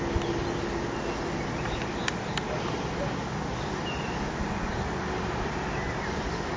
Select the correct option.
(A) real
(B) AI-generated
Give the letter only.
A